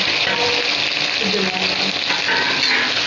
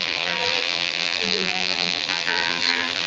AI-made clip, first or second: second